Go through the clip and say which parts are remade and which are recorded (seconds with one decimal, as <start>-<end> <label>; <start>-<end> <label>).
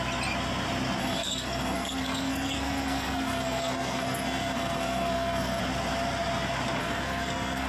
0.0-1.0 recorded; 1.0-5.6 remade; 5.6-6.8 recorded; 6.8-7.7 remade